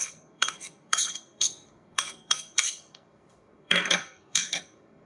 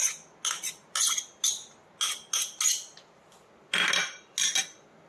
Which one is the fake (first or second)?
first